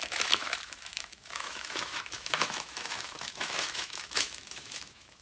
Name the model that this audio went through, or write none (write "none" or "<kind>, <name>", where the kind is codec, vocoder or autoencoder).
autoencoder, DAC-VAE